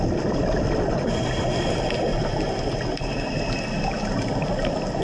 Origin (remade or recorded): recorded